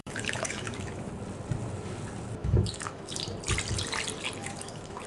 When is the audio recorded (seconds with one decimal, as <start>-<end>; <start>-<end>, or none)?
1.1-2.4; 3.1-4.4